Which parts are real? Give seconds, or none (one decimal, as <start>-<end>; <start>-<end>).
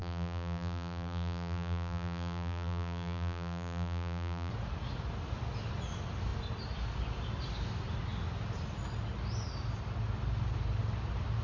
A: 4.5-11.4